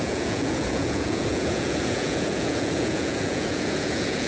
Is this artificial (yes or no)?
yes